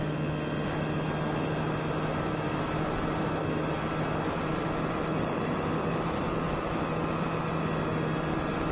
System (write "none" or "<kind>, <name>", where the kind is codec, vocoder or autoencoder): none